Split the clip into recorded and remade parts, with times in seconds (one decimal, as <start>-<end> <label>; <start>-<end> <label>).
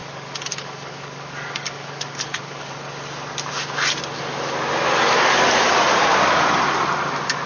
0.0-2.7 remade; 2.7-7.5 recorded